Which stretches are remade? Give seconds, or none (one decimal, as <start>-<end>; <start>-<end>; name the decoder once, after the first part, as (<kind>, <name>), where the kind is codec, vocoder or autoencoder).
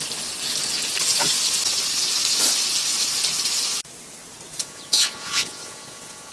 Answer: 4.6-6.3 (vocoder, Vocos)